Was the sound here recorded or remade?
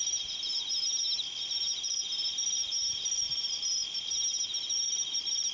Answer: recorded